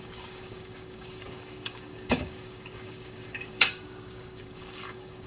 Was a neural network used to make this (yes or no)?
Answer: yes